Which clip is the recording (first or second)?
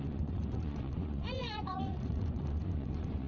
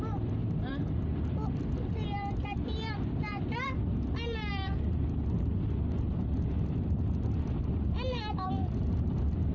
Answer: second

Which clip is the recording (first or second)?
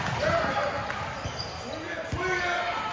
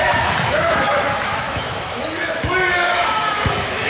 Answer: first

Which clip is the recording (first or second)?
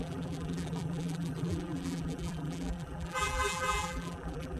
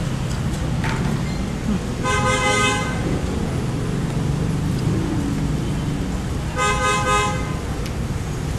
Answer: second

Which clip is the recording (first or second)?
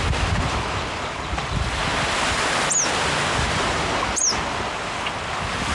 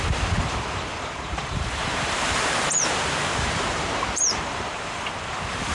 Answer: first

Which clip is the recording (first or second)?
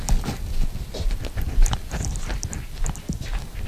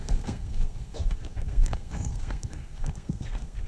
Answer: first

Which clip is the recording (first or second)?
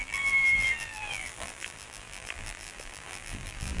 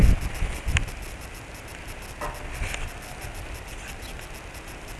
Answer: second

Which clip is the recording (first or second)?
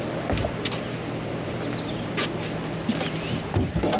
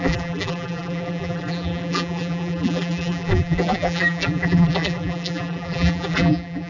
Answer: first